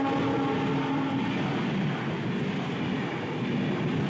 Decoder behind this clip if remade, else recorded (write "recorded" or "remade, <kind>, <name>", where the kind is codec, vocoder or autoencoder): recorded